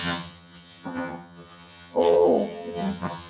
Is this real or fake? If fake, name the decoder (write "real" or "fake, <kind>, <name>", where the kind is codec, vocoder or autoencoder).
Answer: fake, vocoder, HiFi-GAN